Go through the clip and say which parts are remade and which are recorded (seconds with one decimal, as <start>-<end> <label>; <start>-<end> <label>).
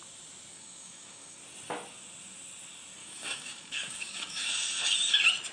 0.0-0.5 recorded; 0.5-1.4 remade; 1.4-3.0 recorded; 3.0-4.5 remade; 4.5-5.5 recorded